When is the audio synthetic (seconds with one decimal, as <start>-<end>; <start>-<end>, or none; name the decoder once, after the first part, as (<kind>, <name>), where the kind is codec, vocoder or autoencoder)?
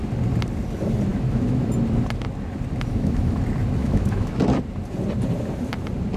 1.1-1.7 (autoencoder, DAC-VAE); 2.9-3.4; 3.8-4.4